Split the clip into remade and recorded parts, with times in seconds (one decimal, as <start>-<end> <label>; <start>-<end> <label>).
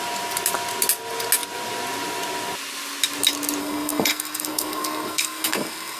0.0-3.6 recorded; 3.6-6.0 remade